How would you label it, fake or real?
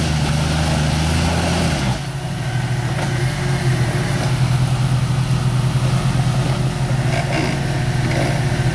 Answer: real